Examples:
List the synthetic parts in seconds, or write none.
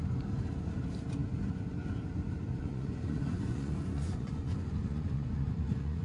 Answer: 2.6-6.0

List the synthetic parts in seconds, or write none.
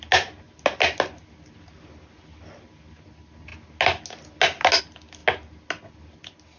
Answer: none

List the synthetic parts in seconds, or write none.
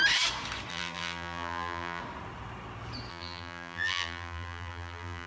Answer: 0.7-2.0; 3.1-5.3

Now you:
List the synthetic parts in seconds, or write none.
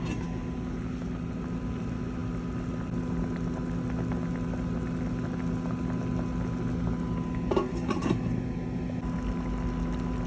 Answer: none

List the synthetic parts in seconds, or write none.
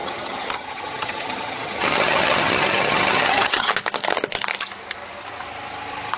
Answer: 0.0-3.7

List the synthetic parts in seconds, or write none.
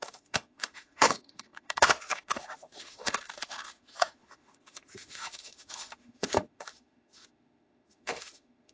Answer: 0.0-8.7